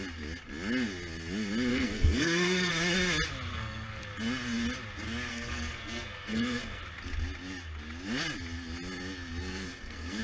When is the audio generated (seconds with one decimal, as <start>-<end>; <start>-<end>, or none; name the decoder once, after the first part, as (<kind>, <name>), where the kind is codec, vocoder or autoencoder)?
1.7-2.7 (codec, SNAC); 3.5-4.0; 5.3-6.8; 9.4-10.2